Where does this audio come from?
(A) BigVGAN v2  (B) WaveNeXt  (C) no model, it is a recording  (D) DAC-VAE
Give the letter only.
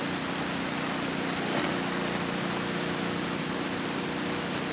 C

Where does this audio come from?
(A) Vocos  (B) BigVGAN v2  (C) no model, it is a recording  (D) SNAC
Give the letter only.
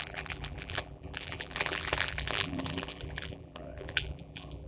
B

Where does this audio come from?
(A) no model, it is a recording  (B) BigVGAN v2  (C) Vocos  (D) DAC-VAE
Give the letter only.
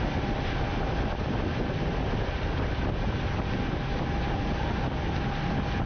A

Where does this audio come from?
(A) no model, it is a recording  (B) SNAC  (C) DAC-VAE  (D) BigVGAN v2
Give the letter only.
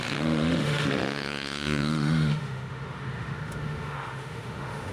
C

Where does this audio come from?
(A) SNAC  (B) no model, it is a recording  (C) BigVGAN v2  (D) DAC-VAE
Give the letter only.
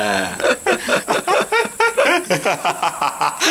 C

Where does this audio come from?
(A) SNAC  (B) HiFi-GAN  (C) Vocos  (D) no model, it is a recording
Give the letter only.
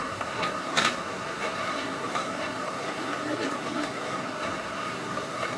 A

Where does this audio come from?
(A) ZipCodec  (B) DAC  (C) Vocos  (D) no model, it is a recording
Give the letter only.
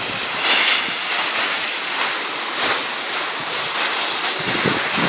D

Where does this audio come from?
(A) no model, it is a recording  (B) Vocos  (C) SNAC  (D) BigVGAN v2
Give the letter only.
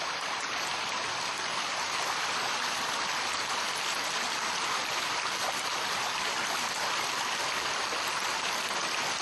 A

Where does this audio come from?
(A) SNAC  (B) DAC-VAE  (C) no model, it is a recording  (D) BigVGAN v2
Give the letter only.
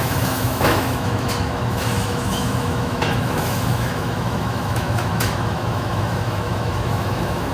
B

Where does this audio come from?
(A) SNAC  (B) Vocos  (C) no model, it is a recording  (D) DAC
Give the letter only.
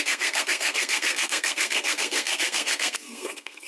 A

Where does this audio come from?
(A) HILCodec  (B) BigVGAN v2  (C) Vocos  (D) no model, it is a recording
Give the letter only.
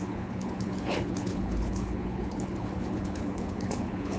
A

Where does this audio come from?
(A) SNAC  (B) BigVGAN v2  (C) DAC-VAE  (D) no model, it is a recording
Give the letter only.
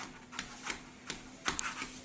D